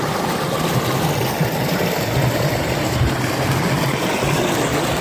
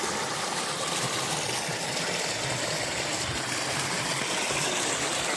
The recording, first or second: first